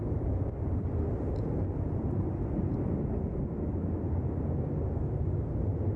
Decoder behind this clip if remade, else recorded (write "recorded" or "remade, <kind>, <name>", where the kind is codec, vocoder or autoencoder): recorded